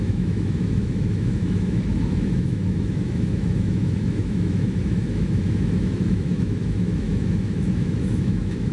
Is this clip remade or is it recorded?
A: remade